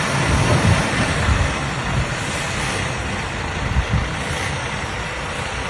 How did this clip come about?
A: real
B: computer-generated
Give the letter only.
A